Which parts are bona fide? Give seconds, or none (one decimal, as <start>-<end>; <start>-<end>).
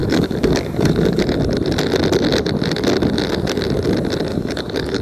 1.2-4.3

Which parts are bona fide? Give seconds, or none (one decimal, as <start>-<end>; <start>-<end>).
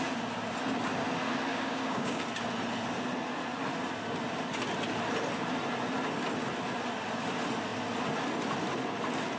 0.0-1.5; 2.2-9.4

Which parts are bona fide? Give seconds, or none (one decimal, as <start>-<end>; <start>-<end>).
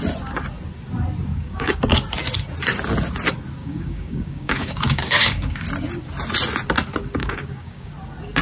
0.0-1.3; 1.8-3.6; 5.6-7.2; 7.9-8.4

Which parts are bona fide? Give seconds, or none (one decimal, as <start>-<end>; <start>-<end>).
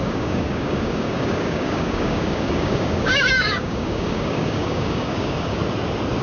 5.6-6.2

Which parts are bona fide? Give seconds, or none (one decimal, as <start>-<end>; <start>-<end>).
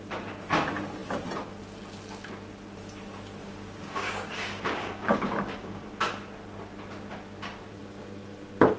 0.0-3.4; 5.9-8.8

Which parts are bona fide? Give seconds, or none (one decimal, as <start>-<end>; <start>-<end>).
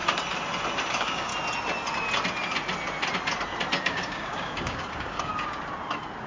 0.0-0.9; 1.3-3.8; 5.3-6.3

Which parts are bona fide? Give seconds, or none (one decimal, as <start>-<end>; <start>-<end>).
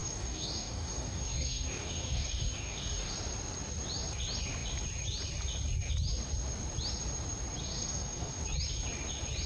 3.1-7.6; 8.4-9.5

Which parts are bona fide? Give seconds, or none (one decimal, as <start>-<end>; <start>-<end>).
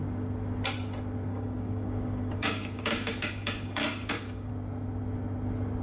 0.0-1.3; 4.5-5.8